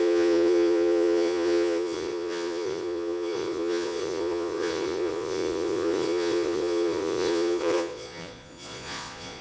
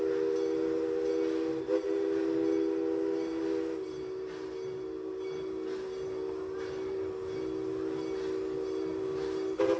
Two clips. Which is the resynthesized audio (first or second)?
first